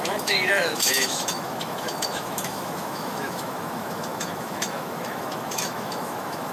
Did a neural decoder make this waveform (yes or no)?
yes